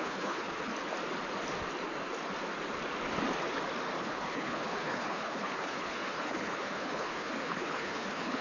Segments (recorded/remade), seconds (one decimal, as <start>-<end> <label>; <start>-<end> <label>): 0.0-0.7 remade; 0.7-4.0 recorded; 4.0-8.4 remade